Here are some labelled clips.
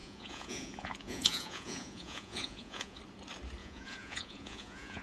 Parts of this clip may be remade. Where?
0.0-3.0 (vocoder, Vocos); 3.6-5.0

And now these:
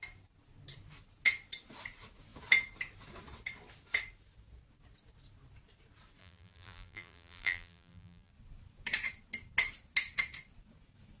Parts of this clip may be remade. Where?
6.2-8.3 (vocoder, BigVGAN v2)

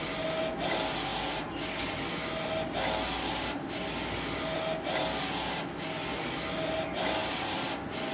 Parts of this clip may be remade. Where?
none

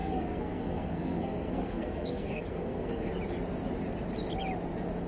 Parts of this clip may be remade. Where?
0.0-3.1 (codec, SNAC)